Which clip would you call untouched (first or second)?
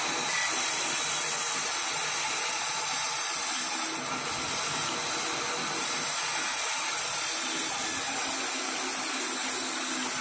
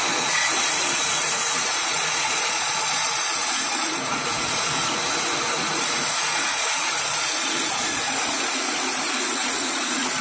first